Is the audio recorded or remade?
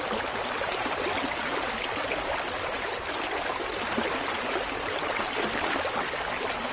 recorded